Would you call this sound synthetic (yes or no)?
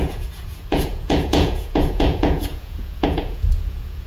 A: yes